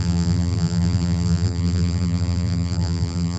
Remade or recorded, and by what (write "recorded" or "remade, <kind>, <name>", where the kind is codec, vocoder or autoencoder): remade, vocoder, BigVGAN v2